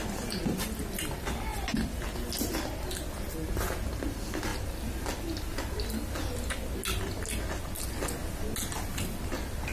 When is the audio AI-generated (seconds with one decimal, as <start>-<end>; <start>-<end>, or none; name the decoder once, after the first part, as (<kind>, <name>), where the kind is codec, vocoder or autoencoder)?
none